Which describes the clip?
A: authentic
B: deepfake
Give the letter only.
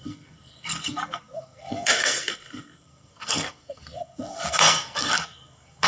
B